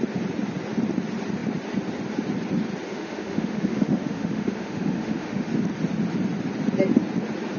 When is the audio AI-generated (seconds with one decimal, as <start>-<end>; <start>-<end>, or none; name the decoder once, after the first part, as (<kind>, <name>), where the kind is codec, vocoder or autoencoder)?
2.9-5.5 (autoencoder, DAC-VAE)